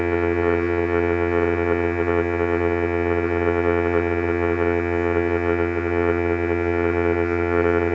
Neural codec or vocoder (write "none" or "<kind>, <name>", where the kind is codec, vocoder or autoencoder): vocoder, HiFi-GAN